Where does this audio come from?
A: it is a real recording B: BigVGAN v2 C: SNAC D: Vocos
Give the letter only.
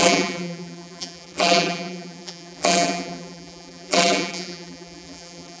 B